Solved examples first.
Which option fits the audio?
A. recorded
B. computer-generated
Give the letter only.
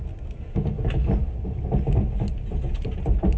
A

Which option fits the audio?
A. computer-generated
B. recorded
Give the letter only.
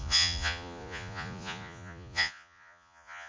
A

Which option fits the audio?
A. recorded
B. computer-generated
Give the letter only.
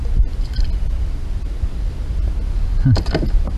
A